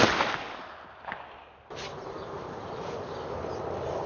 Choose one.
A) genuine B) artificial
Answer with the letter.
A